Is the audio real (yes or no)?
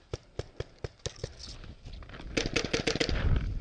yes